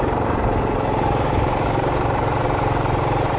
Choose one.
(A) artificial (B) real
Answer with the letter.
A